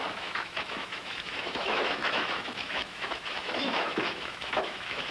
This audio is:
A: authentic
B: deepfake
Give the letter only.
B